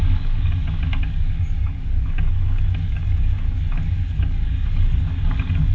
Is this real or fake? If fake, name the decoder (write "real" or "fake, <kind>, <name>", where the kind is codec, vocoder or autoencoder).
fake, codec, DAC